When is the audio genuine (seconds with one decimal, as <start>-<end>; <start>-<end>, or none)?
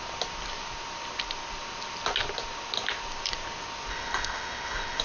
0.0-3.9